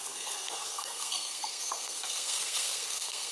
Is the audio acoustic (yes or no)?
no